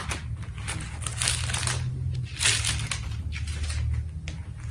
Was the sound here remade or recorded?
recorded